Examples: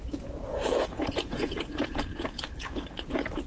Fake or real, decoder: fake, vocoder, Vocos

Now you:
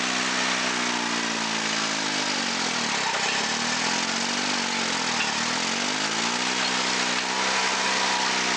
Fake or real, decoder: real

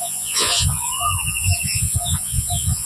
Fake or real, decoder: fake, vocoder, Vocos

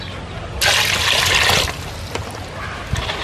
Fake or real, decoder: real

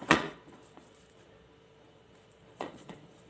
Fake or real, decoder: fake, vocoder, Vocos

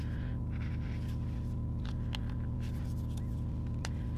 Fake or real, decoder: real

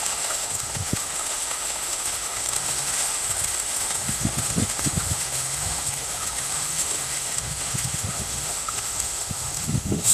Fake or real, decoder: fake, autoencoder, DAC-VAE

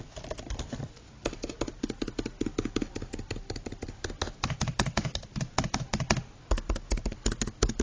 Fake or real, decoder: real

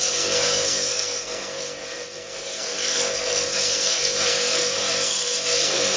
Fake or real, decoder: fake, codec, SNAC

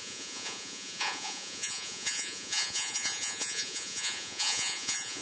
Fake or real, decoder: fake, vocoder, Vocos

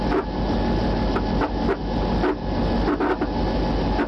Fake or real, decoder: real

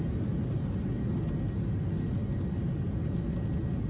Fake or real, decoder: real